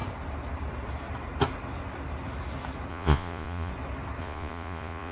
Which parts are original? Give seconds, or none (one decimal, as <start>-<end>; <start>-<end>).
0.0-2.9; 3.7-4.2